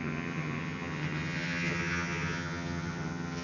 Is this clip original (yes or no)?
no